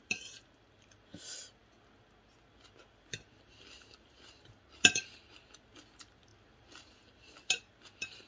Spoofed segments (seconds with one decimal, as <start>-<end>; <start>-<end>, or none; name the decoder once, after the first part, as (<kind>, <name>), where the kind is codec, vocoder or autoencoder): none